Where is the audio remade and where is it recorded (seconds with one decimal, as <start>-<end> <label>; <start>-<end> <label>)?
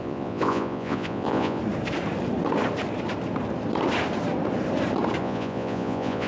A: 0.0-1.6 remade; 1.6-5.2 recorded; 5.2-6.3 remade